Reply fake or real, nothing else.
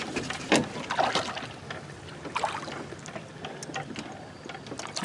real